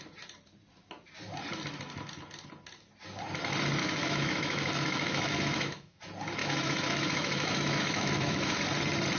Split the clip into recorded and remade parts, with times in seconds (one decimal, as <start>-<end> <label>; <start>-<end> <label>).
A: 0.0-3.8 recorded; 3.8-6.0 remade; 6.0-6.4 recorded; 6.4-8.6 remade; 8.6-9.2 recorded